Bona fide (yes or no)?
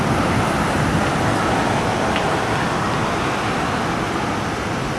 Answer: yes